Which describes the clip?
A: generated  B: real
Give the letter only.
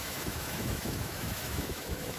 A